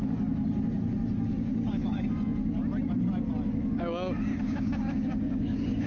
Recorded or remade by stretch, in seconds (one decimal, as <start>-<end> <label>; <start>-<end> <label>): 0.0-1.3 recorded; 1.3-2.1 remade; 2.1-4.3 recorded; 4.3-5.9 remade